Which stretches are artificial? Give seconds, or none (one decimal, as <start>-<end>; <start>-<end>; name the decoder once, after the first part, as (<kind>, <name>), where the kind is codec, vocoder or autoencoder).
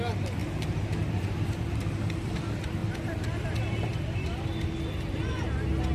none